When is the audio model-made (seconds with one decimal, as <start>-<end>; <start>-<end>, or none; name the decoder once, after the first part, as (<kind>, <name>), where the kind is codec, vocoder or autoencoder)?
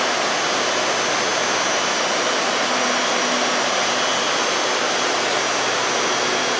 none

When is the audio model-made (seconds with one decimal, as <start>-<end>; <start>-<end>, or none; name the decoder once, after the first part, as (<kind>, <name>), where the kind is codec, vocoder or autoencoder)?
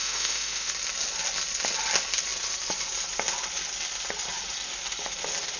0.0-0.7 (autoencoder, DAC-VAE)